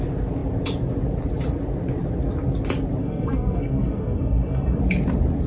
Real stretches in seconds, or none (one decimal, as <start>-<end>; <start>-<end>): 0.0-3.0; 4.8-5.5